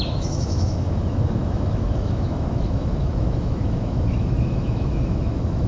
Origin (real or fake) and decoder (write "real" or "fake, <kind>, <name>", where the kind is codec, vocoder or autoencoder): fake, autoencoder, DAC-VAE